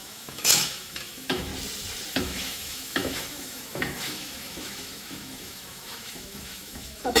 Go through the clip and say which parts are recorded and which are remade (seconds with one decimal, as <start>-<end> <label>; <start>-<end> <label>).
0.0-1.5 remade; 1.5-2.1 recorded; 2.1-7.2 remade